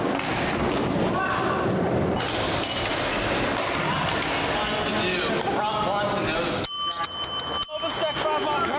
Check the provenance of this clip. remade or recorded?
recorded